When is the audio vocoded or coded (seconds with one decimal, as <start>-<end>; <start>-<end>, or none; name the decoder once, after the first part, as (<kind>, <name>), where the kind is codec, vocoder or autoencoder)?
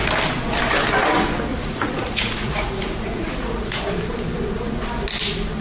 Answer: 1.5-3.8 (vocoder, Vocos)